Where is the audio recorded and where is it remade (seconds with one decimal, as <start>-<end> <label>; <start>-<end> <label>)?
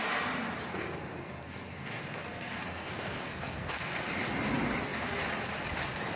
0.0-0.7 recorded; 0.7-3.9 remade; 3.9-6.2 recorded